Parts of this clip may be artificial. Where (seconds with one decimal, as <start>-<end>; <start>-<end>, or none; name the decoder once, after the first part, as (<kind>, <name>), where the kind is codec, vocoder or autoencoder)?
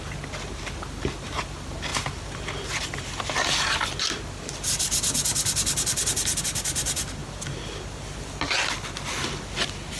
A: none